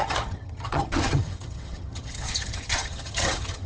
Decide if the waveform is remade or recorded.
remade